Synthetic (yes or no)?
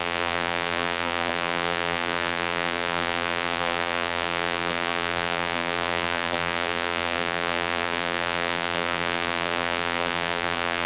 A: yes